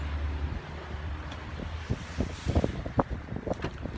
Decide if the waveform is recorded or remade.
recorded